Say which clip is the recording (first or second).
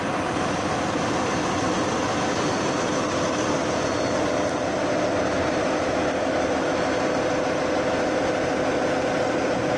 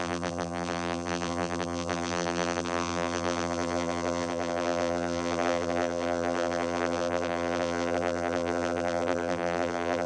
first